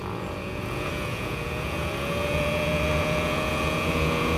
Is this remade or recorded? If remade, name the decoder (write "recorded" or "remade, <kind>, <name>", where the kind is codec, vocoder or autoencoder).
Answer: remade, vocoder, Vocos